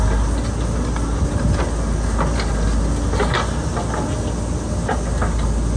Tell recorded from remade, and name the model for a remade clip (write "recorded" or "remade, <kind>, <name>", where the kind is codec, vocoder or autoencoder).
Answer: recorded